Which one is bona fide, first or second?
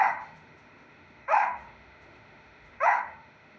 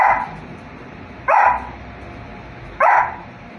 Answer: second